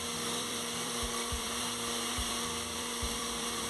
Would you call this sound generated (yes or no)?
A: yes